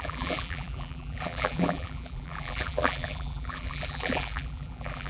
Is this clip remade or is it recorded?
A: remade